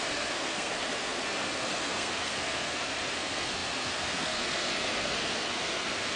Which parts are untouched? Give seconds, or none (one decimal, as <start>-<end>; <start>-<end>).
none